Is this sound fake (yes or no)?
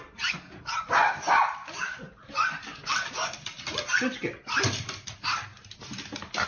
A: no